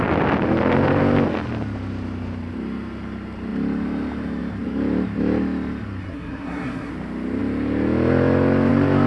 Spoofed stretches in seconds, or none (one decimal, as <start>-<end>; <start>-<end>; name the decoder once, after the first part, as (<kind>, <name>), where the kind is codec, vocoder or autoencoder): 6.0-6.9 (codec, SNAC)

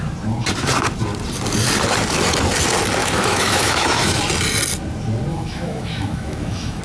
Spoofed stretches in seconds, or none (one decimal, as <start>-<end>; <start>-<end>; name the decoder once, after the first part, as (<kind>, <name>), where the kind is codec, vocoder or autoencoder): 3.0-4.2 (autoencoder, DAC-VAE); 5.3-6.8

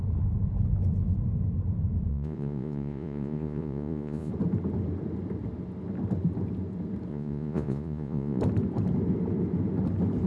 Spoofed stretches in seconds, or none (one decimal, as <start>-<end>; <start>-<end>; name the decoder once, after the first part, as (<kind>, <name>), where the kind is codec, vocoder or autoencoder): 2.1-4.3 (vocoder, Vocos); 7.1-8.4

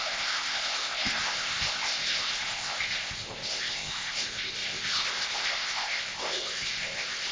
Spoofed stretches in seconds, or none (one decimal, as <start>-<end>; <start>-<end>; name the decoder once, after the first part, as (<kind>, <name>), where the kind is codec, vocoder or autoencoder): 0.0-7.3 (codec, ZipCodec)

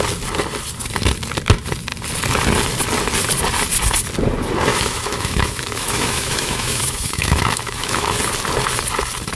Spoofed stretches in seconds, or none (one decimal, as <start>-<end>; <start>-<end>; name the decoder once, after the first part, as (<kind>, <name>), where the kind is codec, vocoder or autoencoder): 4.7-8.2 (autoencoder, DAC-VAE)

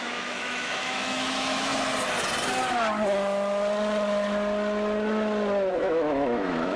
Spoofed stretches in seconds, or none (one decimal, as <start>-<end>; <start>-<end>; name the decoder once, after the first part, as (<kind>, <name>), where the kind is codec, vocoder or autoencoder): 0.0-1.7 (autoencoder, DAC-VAE); 5.7-6.8

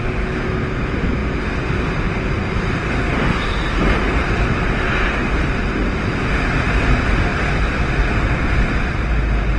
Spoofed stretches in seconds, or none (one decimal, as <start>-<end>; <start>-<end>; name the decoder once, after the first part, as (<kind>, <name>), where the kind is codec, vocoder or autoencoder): none

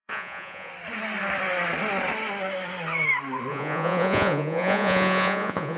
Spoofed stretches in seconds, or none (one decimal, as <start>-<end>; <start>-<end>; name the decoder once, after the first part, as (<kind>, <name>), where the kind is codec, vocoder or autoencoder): 0.0-0.7 (vocoder, Vocos); 3.5-5.8